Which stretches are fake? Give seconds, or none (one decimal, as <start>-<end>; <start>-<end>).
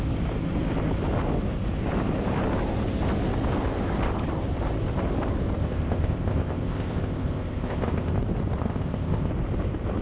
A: 5.6-8.2; 8.6-9.3